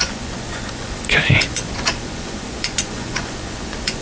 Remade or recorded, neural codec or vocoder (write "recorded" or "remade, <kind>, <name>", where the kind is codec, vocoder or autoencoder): remade, vocoder, Vocos